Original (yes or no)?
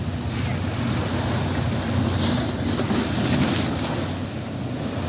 yes